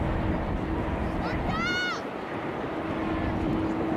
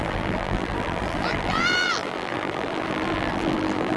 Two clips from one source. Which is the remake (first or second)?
second